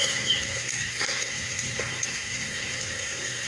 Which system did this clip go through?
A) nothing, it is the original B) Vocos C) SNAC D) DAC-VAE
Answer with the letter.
C